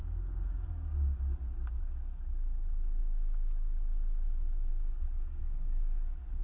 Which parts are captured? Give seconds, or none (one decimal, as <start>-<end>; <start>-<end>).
2.2-5.4